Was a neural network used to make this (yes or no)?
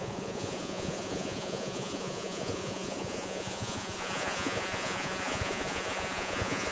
yes